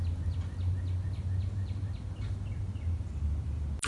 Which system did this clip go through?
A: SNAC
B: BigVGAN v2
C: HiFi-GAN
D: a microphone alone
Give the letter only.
D